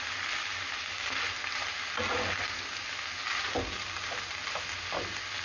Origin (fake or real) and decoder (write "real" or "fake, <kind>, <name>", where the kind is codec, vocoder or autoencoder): real